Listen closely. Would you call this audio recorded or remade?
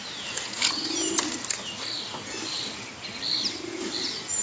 recorded